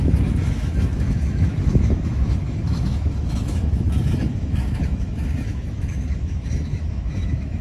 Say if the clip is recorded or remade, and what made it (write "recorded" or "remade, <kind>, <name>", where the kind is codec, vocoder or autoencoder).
remade, autoencoder, DAC-VAE